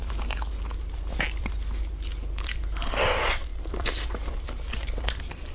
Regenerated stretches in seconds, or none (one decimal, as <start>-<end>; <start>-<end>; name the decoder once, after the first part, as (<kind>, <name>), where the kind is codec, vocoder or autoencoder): none